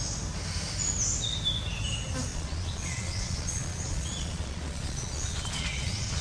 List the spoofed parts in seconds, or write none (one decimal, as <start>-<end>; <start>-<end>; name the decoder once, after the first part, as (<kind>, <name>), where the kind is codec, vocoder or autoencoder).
2.3-6.2 (vocoder, Vocos)